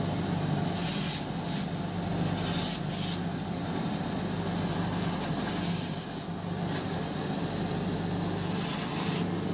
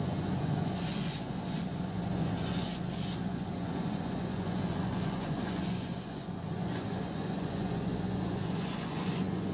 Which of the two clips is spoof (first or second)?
second